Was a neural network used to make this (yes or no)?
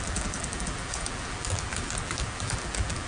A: yes